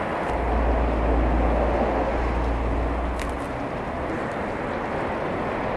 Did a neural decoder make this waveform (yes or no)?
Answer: no